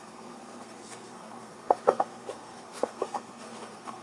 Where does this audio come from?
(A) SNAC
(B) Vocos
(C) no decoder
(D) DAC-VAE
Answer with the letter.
A